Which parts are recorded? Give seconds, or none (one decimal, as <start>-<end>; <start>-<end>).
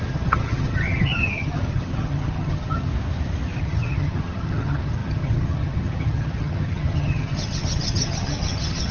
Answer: 2.9-3.6